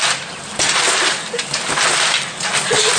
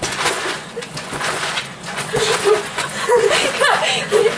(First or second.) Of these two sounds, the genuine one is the first